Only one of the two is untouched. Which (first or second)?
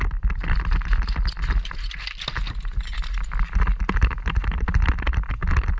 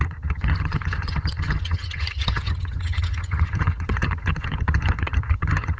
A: first